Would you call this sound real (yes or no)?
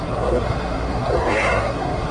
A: no